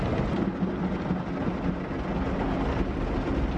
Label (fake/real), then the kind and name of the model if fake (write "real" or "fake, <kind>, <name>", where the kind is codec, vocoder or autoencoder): real